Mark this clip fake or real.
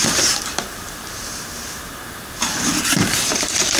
fake